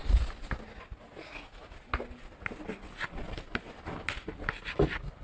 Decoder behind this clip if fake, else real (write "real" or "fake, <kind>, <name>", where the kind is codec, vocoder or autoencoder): real